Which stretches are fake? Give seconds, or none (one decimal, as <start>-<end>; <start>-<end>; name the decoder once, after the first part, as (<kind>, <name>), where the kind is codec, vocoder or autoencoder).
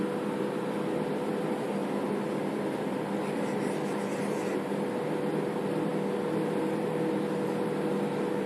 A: 0.0-8.5 (vocoder, BigVGAN v2)